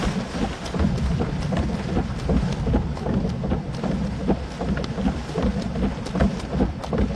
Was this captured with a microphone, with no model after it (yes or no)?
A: yes